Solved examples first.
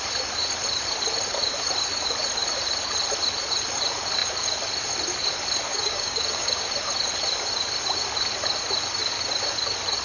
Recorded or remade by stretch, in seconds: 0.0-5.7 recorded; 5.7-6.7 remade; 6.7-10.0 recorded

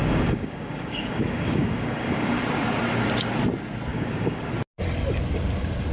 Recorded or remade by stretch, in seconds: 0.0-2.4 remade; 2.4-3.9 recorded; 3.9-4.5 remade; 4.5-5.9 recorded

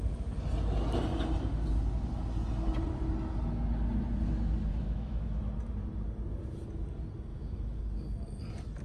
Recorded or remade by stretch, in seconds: 0.0-4.7 recorded; 4.7-5.4 remade; 5.4-7.3 recorded; 7.3-7.8 remade; 7.8-8.8 recorded